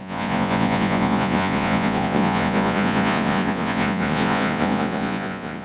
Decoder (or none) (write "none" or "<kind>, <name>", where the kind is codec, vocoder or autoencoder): vocoder, Vocos